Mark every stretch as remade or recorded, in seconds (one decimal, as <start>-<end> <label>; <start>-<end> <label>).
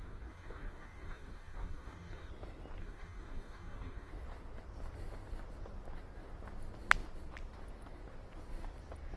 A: 0.0-2.3 remade; 2.3-2.8 recorded; 2.8-4.1 remade; 4.1-9.2 recorded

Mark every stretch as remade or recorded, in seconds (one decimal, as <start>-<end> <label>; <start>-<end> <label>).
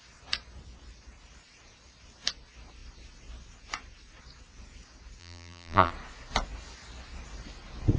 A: 0.0-5.2 recorded; 5.2-5.9 remade; 5.9-8.0 recorded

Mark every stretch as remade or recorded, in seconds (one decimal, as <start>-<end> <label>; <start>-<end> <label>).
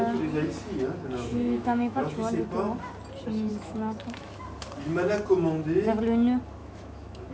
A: 0.0-1.3 recorded; 1.3-2.0 remade; 2.0-3.5 recorded; 3.5-4.4 remade; 4.4-6.6 recorded; 6.6-7.3 remade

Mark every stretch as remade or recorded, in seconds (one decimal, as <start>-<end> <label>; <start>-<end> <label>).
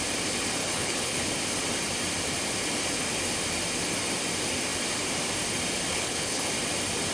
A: 0.0-0.6 recorded; 0.6-1.3 remade; 1.3-5.9 recorded; 5.9-6.4 remade; 6.4-7.1 recorded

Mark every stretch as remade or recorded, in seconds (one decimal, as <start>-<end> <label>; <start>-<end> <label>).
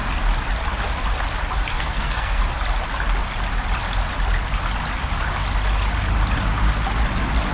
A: 0.0-1.7 recorded; 1.7-2.4 remade; 2.4-7.5 recorded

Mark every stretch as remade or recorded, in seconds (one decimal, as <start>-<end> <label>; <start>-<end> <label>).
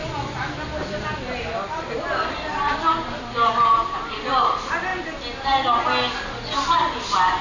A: 0.0-7.4 recorded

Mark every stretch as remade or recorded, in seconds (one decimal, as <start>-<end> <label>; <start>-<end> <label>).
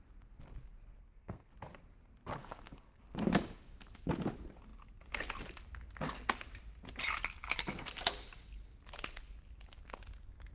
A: 0.0-1.0 recorded; 1.0-1.5 remade; 1.5-2.4 recorded; 2.4-3.0 remade; 3.0-10.5 recorded